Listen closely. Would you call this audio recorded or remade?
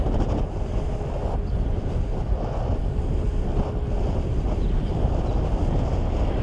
recorded